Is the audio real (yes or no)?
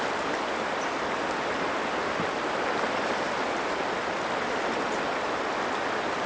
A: yes